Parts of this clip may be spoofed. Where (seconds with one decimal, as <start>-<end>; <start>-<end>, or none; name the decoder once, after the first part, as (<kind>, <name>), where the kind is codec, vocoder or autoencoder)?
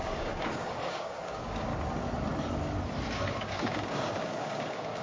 0.0-1.7 (codec, DAC); 3.4-5.0